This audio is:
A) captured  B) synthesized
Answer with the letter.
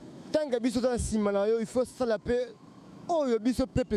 B